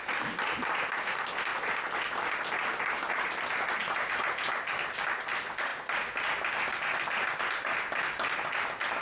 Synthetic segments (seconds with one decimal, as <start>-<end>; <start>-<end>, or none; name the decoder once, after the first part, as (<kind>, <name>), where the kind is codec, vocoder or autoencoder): none